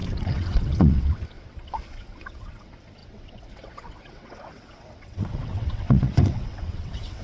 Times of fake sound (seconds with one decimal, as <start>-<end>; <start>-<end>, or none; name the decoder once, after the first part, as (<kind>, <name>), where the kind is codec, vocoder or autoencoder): 0.0-7.2 (vocoder, WaveNeXt)